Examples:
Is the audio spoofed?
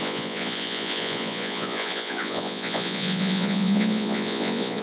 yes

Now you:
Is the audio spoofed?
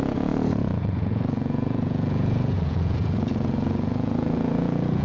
yes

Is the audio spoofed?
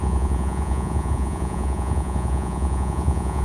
yes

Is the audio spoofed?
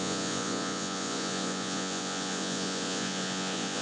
yes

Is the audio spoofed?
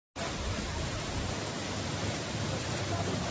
no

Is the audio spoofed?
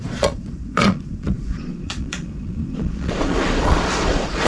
yes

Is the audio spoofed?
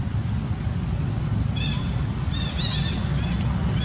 no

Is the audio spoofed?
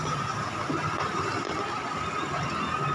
no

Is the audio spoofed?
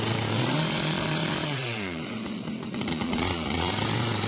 yes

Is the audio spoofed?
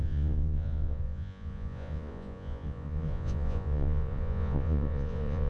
yes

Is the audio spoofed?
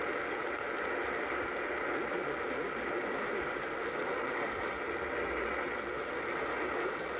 no